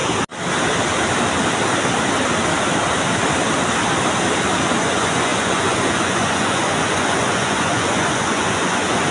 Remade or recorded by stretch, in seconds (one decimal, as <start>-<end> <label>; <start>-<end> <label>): 0.0-4.6 recorded; 4.6-9.1 remade